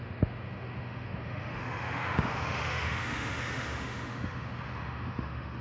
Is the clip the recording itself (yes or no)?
no